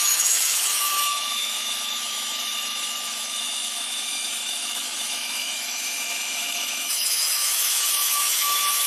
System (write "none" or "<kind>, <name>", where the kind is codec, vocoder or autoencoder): autoencoder, DAC-VAE